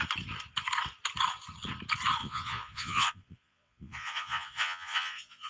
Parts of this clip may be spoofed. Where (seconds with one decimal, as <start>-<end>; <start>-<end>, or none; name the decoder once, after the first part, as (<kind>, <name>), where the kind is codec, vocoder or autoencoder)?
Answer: 2.2-5.5 (vocoder, Vocos)